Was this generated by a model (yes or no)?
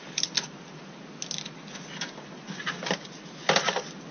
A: no